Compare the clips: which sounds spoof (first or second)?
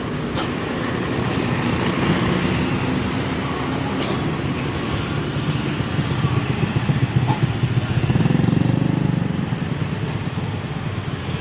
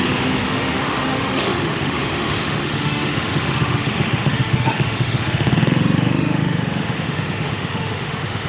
second